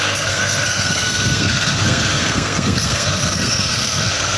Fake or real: fake